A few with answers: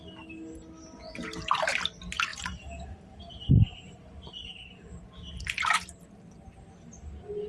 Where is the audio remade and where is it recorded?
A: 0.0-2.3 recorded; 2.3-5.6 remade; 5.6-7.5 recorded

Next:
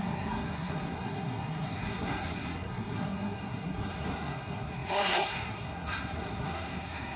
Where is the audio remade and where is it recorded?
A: 0.0-7.2 remade